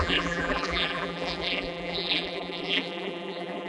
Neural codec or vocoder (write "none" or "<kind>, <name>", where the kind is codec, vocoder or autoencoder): vocoder, BigVGAN v2